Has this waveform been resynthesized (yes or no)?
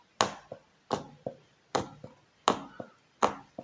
no